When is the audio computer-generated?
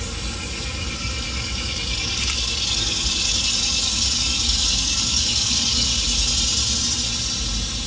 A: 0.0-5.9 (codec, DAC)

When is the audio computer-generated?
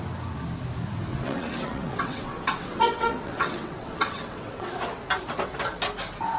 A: 1.1-4.7 (vocoder, WaveNeXt)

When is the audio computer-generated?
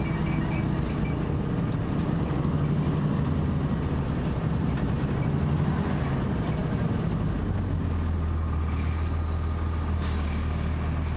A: none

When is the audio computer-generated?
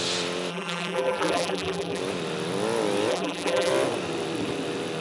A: 0.5-2.0 (vocoder, BigVGAN v2); 3.1-3.7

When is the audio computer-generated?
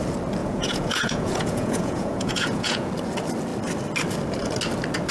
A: 0.4-2.9 (vocoder, Vocos)